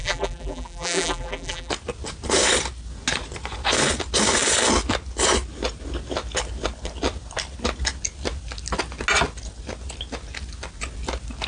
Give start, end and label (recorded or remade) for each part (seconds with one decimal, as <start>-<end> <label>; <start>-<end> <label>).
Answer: 0.0-1.7 remade; 1.7-11.5 recorded